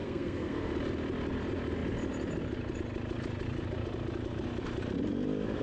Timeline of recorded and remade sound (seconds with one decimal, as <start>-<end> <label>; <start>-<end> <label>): 0.0-0.7 remade; 0.7-5.6 recorded